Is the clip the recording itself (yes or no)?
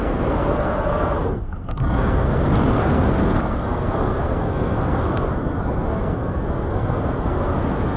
no